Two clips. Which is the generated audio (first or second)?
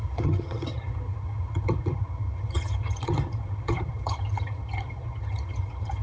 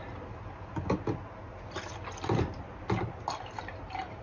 first